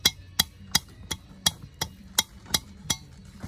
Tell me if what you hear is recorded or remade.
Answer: recorded